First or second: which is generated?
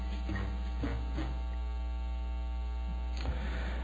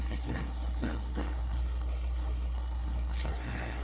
second